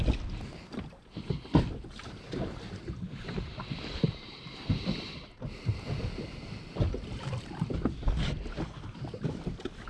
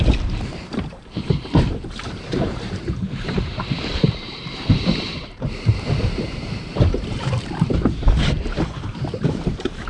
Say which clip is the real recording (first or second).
first